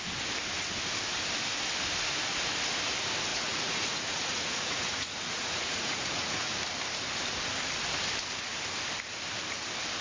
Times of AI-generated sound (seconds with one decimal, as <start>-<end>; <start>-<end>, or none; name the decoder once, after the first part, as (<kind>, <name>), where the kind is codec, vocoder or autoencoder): 3.3-6.5 (vocoder, Vocos)